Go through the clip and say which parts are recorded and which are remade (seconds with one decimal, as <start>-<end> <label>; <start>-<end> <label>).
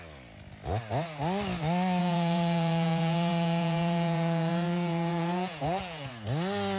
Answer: 0.0-2.0 recorded; 2.0-6.1 remade; 6.1-6.8 recorded